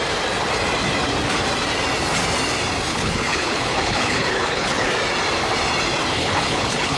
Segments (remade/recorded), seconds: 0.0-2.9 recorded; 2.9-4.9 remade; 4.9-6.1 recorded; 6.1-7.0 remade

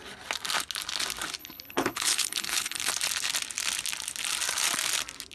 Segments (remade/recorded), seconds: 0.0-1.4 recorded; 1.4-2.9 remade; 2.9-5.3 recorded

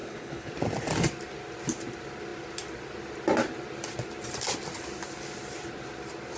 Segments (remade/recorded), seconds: 0.0-0.5 remade; 0.5-6.4 recorded